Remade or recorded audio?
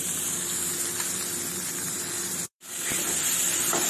remade